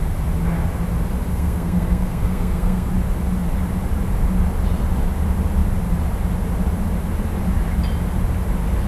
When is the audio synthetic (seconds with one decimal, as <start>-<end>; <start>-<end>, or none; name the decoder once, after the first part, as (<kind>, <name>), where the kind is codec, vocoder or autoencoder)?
1.3-2.9 (codec, SNAC)